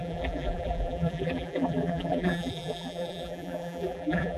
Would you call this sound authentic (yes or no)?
no